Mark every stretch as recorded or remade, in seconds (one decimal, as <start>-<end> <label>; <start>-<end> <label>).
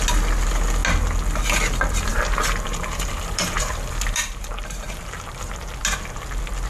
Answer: 0.0-2.1 recorded; 2.1-5.8 remade; 5.8-6.7 recorded